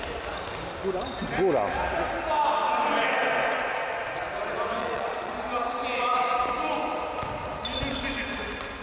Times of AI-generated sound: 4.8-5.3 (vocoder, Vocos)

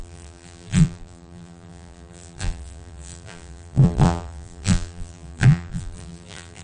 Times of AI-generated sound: 0.0-6.6 (vocoder, BigVGAN v2)

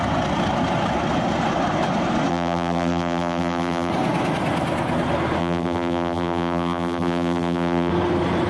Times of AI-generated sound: 2.3-3.9 (vocoder, BigVGAN v2); 5.4-7.9

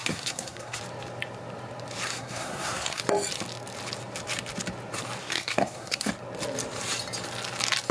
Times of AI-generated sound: 0.0-0.8 (codec, SNAC); 2.1-3.0; 5.2-6.1

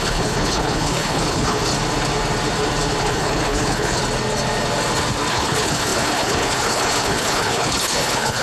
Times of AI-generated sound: 0.0-1.7 (codec, HILCodec); 3.0-4.0; 5.3-8.4

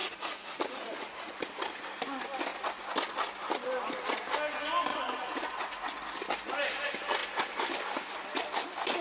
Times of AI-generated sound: 0.0-1.3 (vocoder, Vocos); 4.9-5.9

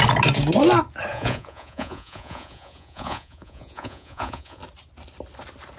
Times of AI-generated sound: 1.1-4.6 (vocoder, Vocos)